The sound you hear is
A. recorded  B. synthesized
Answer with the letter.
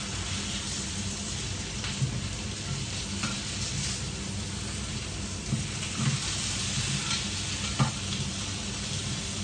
A